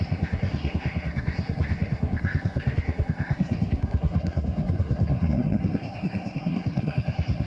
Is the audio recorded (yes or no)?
no